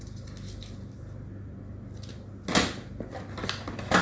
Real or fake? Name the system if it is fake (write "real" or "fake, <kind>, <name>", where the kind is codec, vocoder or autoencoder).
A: real